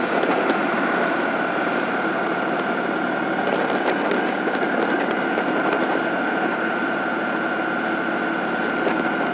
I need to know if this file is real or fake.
real